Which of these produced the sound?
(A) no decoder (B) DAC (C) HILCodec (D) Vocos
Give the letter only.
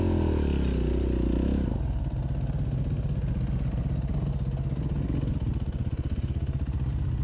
A